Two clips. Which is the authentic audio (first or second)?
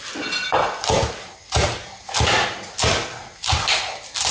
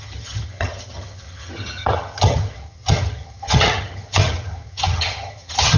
first